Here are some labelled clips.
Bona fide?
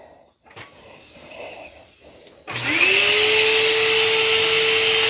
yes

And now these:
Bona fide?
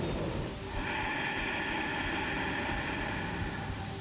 yes